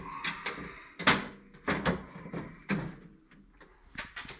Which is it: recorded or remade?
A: recorded